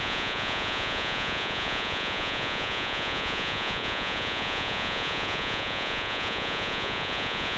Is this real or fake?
fake